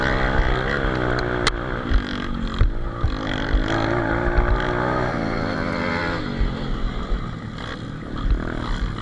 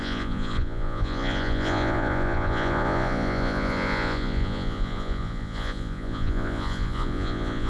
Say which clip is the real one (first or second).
first